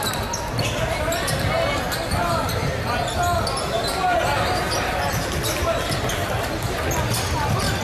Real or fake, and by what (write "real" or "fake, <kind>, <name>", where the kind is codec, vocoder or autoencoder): real